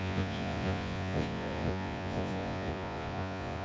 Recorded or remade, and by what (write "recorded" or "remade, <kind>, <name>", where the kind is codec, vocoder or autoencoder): remade, vocoder, Vocos